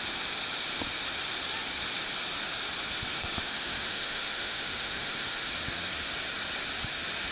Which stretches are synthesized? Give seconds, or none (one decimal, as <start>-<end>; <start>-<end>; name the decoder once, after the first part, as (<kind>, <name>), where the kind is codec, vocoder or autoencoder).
3.1-5.5 (autoencoder, DAC-VAE)